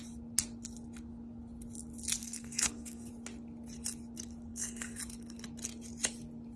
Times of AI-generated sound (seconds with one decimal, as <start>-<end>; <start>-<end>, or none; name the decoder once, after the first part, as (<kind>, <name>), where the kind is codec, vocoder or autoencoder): 2.2-3.1 (codec, SNAC); 4.5-5.0